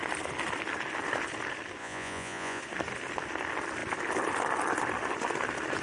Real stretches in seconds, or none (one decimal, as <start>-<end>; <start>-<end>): 0.0-1.8; 2.6-5.8